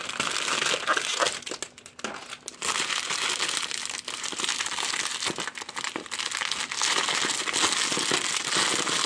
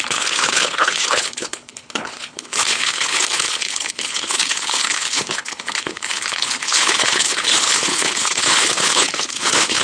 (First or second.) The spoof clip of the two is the second